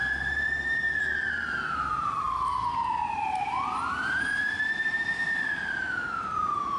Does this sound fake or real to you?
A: fake